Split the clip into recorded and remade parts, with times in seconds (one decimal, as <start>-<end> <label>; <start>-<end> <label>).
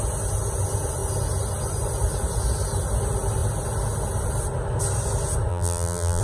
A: 0.0-5.5 recorded; 5.5-6.2 remade